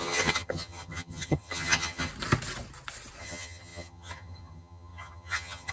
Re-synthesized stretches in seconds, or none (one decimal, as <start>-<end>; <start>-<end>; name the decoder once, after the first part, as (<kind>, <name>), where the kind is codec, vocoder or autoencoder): 0.0-2.1 (vocoder, HiFi-GAN); 3.2-5.7